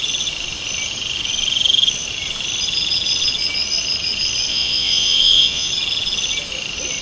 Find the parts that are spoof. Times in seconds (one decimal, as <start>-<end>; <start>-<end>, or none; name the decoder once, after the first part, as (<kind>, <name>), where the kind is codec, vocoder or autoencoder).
4.5-5.7 (vocoder, Vocos)